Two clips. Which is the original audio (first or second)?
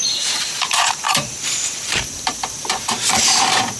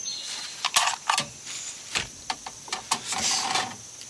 second